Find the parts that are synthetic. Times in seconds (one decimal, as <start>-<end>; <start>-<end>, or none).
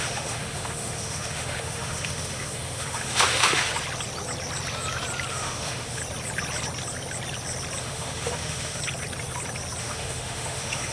0.0-3.7; 5.3-6.0; 7.8-8.8; 9.8-10.9